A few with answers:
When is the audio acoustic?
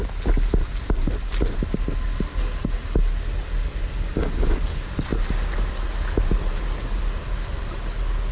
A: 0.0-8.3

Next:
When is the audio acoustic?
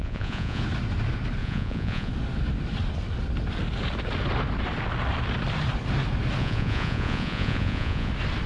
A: 0.6-1.4; 2.1-6.4; 8.1-8.5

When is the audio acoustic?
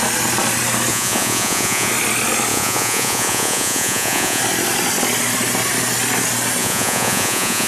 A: 0.0-0.9; 1.9-2.5; 4.4-6.6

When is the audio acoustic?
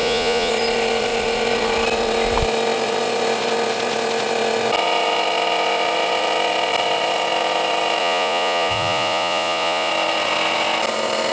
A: 0.5-8.0; 9.9-11.3